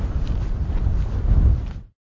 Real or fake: real